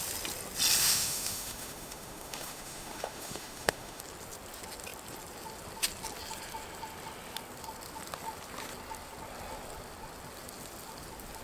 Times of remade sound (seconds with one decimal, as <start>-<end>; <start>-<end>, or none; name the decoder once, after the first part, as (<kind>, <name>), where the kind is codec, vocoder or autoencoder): 0.8-4.0 (autoencoder, DAC-VAE)